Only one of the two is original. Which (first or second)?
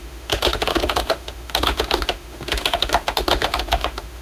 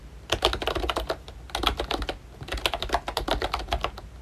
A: second